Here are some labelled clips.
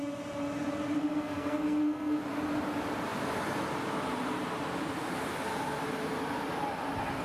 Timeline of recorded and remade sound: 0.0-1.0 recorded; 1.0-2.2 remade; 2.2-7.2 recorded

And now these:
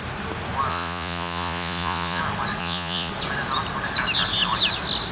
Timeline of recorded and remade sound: 0.0-0.7 recorded; 0.7-2.2 remade; 2.2-2.6 recorded; 2.6-3.1 remade; 3.1-5.1 recorded

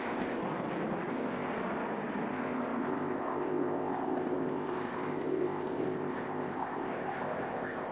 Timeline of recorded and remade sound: 0.0-0.4 remade; 0.4-1.1 recorded; 1.1-1.5 remade; 1.5-2.3 recorded; 2.3-7.9 remade

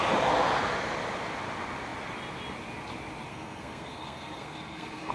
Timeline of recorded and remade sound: 0.0-3.3 recorded; 3.3-5.1 remade

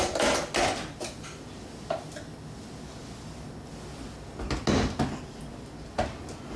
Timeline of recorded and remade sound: 0.0-6.6 recorded